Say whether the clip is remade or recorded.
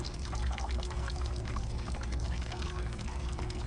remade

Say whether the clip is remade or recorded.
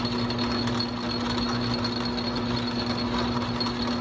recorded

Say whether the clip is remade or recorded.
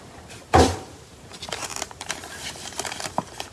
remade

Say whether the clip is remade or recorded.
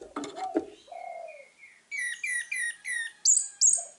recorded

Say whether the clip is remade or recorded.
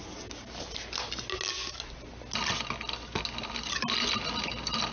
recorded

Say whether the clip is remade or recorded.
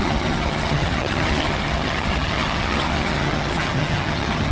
remade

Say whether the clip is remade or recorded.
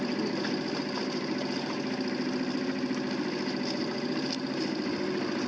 recorded